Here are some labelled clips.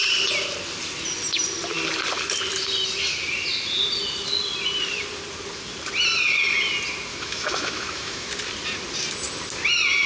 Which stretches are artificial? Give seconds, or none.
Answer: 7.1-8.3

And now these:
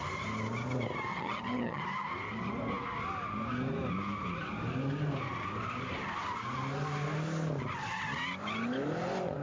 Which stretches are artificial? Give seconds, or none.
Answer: 1.1-1.8

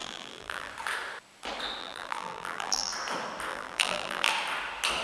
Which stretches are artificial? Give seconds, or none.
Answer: 0.0-0.7; 1.8-2.9; 3.5-4.3

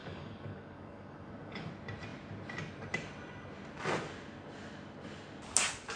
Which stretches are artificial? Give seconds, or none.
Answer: 0.0-1.7